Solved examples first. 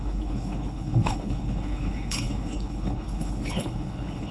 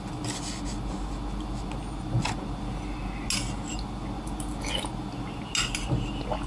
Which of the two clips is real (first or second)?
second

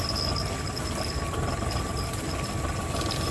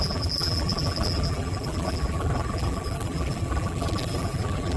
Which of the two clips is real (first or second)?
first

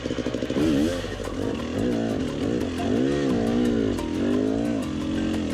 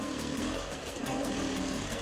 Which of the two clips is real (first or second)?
first